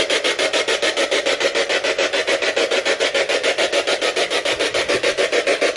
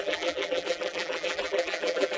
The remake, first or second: second